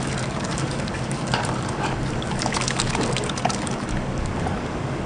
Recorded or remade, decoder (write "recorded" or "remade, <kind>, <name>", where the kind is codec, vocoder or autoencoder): remade, codec, DAC